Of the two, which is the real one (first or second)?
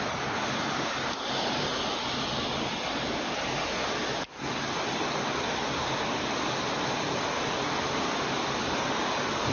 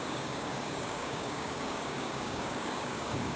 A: first